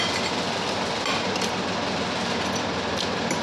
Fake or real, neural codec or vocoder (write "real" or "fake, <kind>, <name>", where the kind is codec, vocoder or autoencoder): real